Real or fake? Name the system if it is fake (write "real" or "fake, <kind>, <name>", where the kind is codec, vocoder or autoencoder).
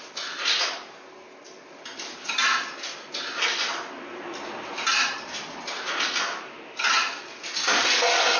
real